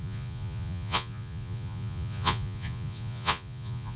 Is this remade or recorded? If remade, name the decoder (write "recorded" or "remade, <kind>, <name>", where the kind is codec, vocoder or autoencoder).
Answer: remade, vocoder, Vocos